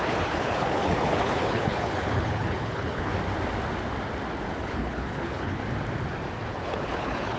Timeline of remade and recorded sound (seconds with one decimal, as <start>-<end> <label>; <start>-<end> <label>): 0.0-3.1 remade; 3.1-4.5 recorded; 4.5-5.6 remade; 5.6-6.5 recorded; 6.5-7.4 remade